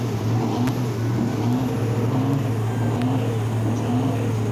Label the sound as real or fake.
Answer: real